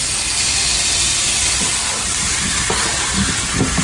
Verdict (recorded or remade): recorded